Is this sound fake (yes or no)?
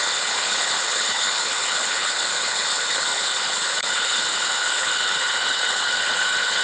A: yes